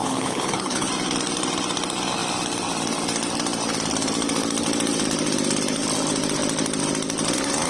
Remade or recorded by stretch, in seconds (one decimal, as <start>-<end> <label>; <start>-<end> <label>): 0.0-0.9 remade; 0.9-7.7 recorded